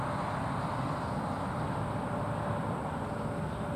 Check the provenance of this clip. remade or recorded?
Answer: recorded